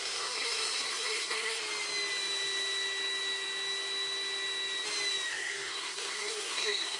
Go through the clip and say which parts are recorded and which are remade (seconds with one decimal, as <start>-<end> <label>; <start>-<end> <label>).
0.0-1.6 remade; 1.6-5.3 recorded; 5.3-7.0 remade